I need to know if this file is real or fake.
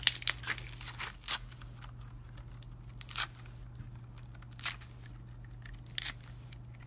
real